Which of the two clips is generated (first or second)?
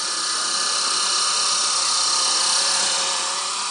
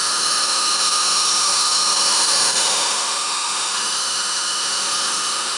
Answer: second